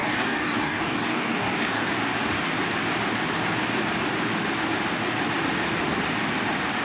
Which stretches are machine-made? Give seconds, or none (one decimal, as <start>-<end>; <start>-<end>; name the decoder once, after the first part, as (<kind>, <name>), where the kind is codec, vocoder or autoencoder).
0.0-1.8 (codec, DAC)